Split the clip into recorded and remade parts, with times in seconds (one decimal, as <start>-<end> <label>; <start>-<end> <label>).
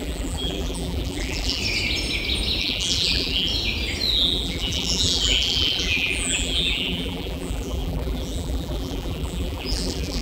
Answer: 0.0-1.6 remade; 1.6-2.6 recorded; 2.6-3.5 remade; 3.5-4.1 recorded; 4.1-10.2 remade